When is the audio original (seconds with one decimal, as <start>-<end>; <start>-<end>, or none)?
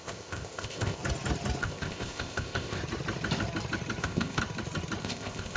1.0-1.6; 2.8-4.0; 4.4-5.0